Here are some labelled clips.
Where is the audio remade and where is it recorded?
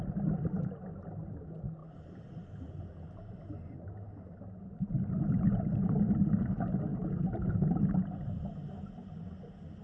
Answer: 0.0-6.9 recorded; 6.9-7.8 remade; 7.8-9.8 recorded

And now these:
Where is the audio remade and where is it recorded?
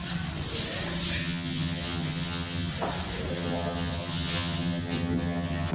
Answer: 0.0-1.2 recorded; 1.2-2.7 remade; 2.7-3.3 recorded; 3.3-5.7 remade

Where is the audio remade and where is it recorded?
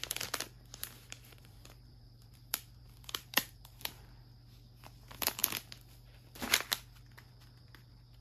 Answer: 0.0-1.4 recorded; 1.4-4.2 remade; 4.2-8.2 recorded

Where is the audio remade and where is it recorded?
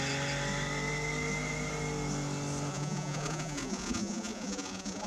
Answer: 0.0-2.7 recorded; 2.7-5.1 remade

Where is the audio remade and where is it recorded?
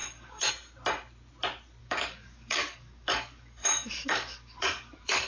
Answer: 0.0-0.5 remade; 0.5-1.8 recorded; 1.8-5.3 remade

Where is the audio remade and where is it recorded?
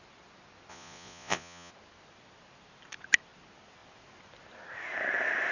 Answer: 0.0-0.7 recorded; 0.7-1.7 remade; 1.7-5.5 recorded